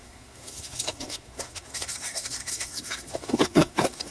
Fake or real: fake